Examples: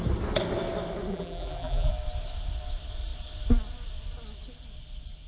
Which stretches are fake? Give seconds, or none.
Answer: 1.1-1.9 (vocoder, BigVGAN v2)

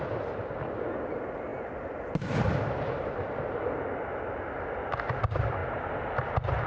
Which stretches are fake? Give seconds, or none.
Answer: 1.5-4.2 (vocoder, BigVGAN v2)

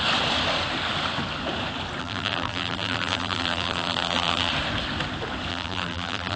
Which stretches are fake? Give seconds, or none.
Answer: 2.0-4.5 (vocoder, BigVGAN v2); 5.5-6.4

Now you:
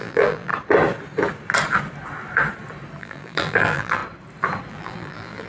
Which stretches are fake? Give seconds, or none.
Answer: 0.0-0.5 (vocoder, BigVGAN v2); 3.0-4.0; 4.7-5.5